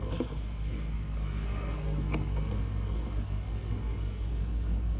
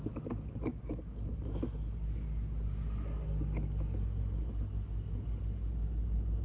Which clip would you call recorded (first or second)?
second